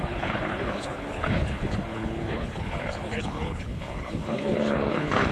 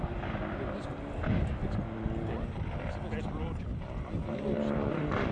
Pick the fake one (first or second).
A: first